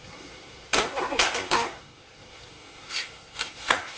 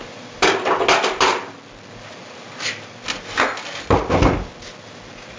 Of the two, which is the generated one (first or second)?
first